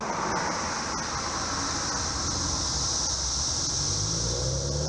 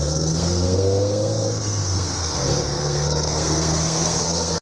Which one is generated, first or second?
second